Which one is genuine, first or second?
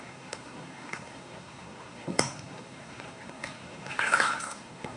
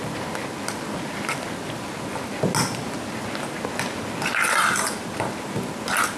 second